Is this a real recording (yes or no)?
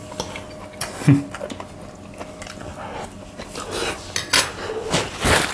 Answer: yes